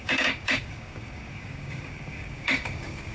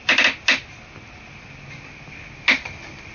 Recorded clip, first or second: second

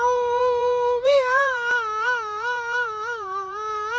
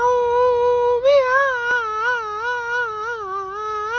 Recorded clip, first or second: second